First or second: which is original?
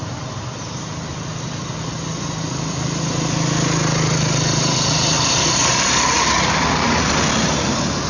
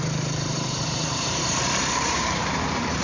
first